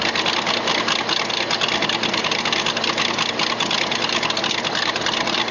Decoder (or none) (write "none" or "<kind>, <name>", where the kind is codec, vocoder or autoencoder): none